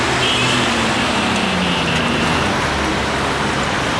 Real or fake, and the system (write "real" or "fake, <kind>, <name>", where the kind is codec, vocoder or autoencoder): real